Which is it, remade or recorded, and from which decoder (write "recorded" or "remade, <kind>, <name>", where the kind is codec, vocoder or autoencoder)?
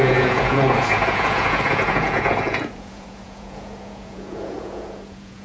remade, vocoder, Vocos